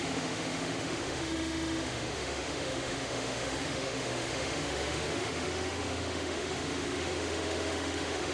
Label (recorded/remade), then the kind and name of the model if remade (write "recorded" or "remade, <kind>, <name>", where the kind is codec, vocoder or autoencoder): remade, autoencoder, DAC-VAE